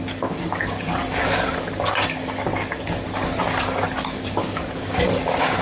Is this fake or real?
fake